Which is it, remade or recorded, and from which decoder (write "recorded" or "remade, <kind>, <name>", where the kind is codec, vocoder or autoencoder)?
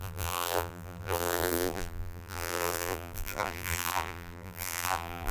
remade, vocoder, BigVGAN v2